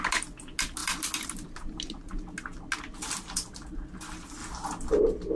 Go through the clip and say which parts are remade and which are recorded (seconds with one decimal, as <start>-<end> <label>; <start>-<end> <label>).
0.0-5.4 recorded